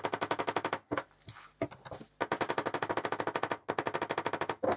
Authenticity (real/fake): real